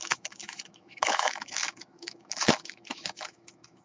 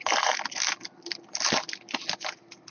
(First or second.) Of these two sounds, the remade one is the first